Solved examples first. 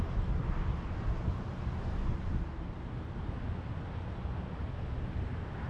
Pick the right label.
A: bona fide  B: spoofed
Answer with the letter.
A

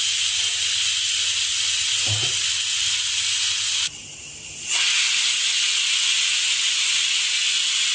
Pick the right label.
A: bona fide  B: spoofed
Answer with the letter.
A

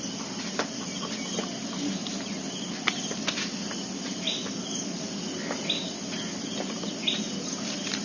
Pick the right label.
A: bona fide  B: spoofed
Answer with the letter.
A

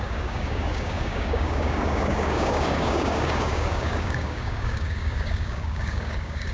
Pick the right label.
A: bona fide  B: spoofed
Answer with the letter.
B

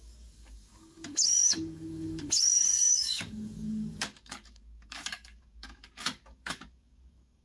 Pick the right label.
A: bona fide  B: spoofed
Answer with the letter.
B